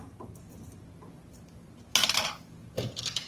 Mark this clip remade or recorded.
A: recorded